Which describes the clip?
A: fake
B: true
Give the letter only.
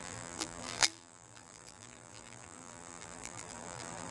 A